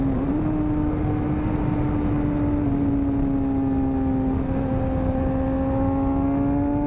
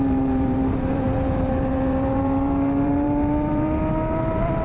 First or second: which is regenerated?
second